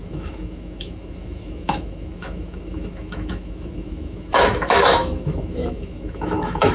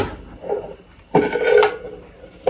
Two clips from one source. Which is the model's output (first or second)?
first